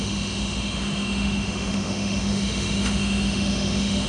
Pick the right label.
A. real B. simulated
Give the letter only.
B